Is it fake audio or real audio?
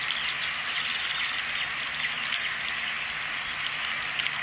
real